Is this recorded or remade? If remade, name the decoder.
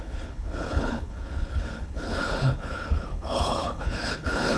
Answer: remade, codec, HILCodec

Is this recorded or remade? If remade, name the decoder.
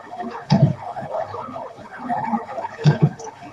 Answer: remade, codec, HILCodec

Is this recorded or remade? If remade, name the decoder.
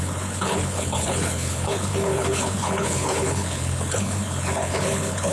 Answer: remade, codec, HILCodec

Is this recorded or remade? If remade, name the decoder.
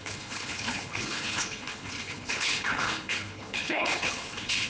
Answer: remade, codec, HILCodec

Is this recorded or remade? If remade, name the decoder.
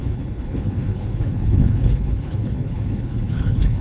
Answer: remade, codec, HILCodec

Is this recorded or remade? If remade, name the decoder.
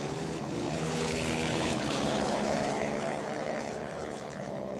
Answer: remade, codec, HILCodec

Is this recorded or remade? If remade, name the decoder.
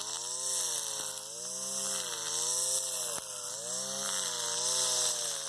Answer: recorded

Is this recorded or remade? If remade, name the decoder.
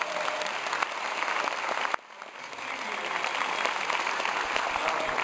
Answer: recorded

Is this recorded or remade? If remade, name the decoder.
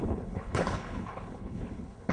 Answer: remade, codec, HILCodec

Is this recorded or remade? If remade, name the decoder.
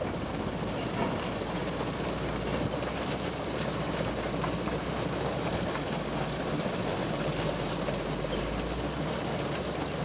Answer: recorded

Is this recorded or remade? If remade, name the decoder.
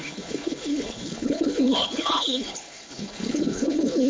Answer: remade, codec, HILCodec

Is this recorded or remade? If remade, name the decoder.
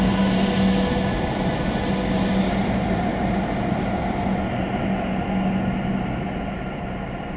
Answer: recorded